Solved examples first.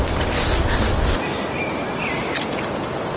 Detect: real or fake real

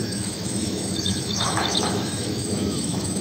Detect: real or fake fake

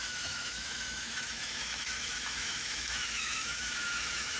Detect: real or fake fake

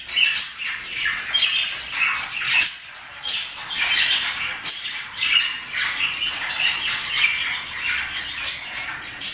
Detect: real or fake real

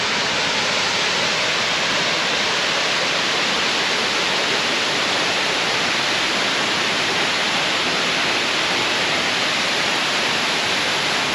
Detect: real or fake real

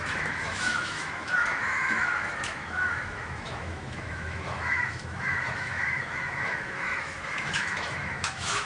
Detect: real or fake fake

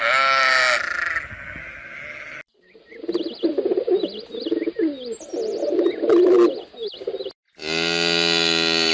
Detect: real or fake real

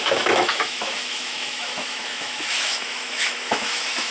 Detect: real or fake fake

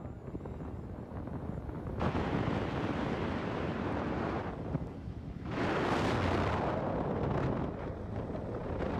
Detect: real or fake real